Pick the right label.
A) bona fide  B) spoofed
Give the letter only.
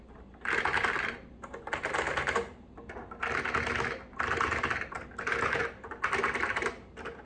A